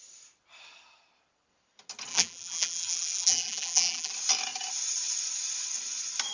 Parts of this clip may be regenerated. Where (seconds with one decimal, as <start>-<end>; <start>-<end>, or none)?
2.1-4.1